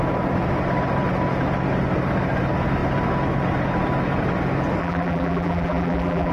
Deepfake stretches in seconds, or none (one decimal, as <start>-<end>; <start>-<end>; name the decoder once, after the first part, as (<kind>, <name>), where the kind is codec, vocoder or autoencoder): 4.8-6.3 (vocoder, BigVGAN v2)